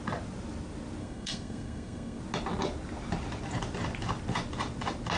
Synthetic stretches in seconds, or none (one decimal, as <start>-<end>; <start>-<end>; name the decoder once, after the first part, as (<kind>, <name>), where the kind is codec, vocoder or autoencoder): 1.0-2.2 (codec, SNAC)